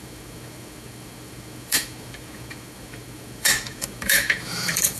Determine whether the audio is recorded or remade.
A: remade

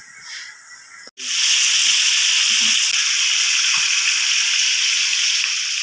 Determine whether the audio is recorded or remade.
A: recorded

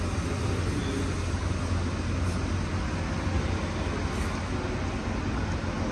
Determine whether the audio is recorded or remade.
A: recorded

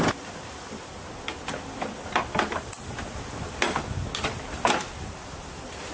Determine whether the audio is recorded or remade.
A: recorded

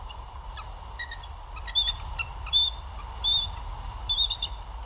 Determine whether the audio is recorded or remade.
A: recorded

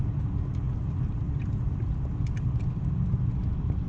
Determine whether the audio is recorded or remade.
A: recorded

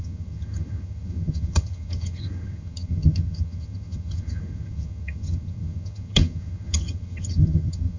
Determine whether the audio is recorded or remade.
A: remade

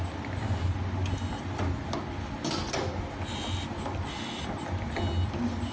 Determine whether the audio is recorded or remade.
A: recorded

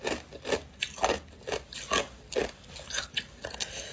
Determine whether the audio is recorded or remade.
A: recorded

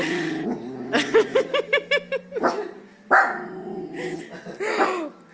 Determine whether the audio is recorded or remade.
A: recorded